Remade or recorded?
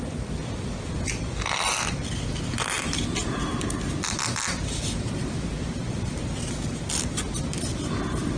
recorded